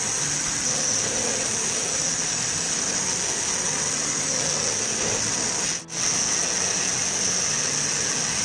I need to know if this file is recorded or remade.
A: recorded